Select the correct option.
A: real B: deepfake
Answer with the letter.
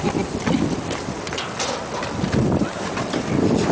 A